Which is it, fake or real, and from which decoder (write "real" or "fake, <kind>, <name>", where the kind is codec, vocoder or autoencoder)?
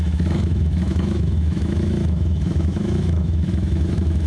fake, autoencoder, DAC-VAE